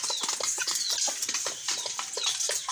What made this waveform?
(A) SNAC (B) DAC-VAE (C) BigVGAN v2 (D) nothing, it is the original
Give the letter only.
D